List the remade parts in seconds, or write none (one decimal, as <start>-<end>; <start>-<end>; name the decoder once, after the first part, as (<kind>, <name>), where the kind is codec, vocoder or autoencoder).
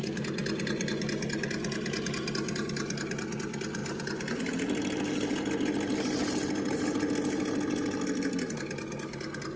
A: none